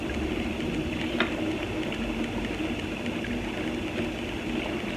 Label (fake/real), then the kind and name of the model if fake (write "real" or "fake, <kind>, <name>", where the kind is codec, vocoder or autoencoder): real